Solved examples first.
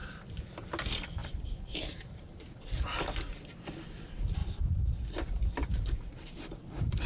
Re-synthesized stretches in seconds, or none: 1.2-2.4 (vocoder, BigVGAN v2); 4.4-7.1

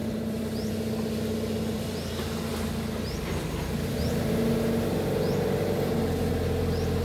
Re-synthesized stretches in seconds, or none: 0.0-0.7 (vocoder, BigVGAN v2)

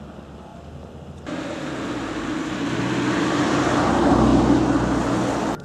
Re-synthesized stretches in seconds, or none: none

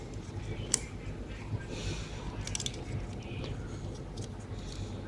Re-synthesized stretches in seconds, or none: 0.0-1.8 (vocoder, BigVGAN v2)

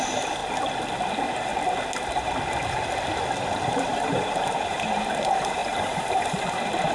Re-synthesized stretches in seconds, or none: 0.0-0.4 (vocoder, BigVGAN v2); 1.1-1.5; 3.7-6.9

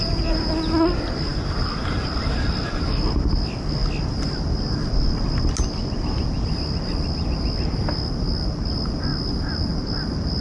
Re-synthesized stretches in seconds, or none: 0.0-0.5 (vocoder, BigVGAN v2)